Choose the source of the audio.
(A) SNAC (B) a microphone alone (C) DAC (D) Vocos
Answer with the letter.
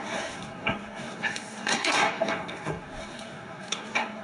A